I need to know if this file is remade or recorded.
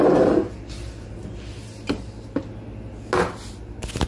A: recorded